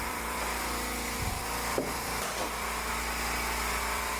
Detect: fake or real fake